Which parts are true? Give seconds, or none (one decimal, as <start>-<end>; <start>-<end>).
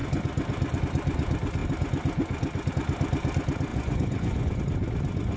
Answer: 0.0-3.7; 4.6-5.4